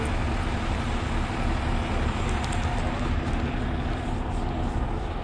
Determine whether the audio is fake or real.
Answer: real